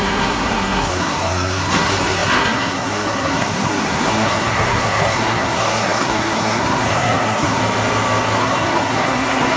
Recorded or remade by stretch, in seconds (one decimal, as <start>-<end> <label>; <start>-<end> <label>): 0.0-7.6 remade; 7.6-8.4 recorded; 8.4-9.6 remade